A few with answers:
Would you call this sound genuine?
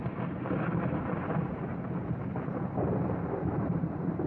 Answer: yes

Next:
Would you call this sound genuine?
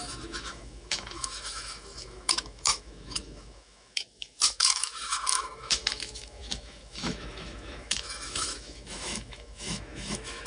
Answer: no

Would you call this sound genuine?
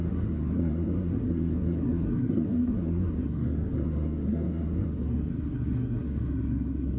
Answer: no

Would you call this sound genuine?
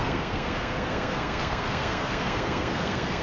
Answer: no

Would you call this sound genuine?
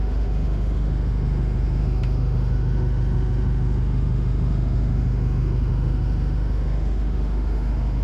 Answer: no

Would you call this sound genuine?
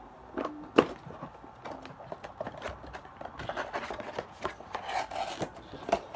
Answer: yes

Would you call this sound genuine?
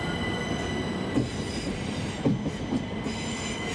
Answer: yes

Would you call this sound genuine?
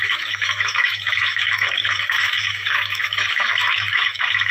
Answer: no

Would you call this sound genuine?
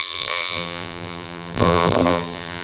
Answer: no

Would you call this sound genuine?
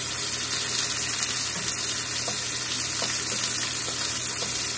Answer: yes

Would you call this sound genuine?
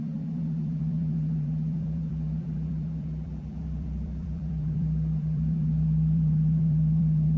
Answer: no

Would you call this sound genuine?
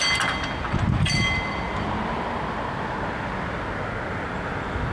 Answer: yes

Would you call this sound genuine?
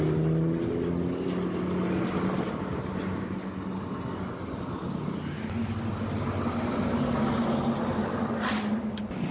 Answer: yes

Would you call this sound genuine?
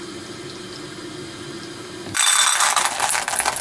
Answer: yes